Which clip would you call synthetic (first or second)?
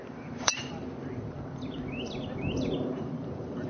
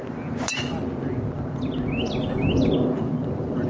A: first